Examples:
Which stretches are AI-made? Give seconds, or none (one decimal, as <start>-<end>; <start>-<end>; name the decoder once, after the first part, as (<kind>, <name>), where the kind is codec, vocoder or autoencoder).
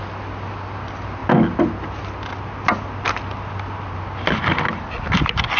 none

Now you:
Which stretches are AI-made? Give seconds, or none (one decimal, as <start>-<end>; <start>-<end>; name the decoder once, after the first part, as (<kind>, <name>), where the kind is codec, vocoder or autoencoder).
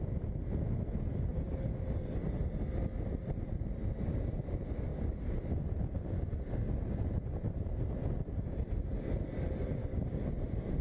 9.8-10.3 (codec, DAC)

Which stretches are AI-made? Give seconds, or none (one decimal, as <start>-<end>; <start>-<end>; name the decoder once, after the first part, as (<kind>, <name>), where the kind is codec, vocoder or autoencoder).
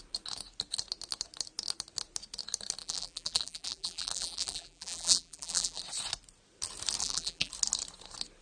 2.8-5.8 (vocoder, BigVGAN v2); 7.0-7.5